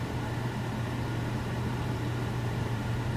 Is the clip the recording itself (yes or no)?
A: no